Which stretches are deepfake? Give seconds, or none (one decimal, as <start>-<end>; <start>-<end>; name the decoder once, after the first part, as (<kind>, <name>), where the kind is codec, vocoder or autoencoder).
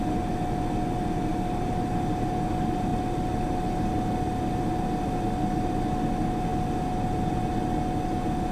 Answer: none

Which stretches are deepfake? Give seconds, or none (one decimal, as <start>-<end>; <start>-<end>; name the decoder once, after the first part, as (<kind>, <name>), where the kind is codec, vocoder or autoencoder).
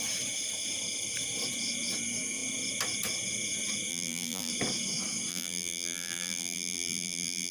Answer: 3.9-4.5 (vocoder, BigVGAN v2); 5.3-7.5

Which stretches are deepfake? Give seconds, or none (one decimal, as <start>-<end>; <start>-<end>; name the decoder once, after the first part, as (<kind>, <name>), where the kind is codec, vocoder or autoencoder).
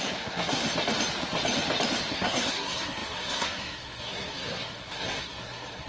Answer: 0.0-0.6 (codec, SNAC); 2.1-5.9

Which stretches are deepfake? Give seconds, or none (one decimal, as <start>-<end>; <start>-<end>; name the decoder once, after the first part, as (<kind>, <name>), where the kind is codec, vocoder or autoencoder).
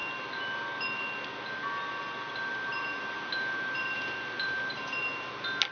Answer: none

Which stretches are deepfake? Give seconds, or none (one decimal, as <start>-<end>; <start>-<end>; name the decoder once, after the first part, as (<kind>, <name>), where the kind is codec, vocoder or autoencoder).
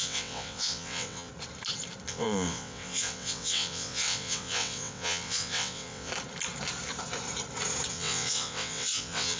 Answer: 0.0-1.3 (vocoder, WaveNeXt); 2.1-6.1; 7.9-9.4